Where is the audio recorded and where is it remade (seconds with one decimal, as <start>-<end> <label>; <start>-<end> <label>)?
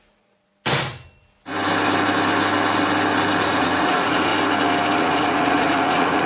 0.0-0.5 remade; 0.5-3.4 recorded; 3.4-4.3 remade; 4.3-5.0 recorded; 5.0-6.3 remade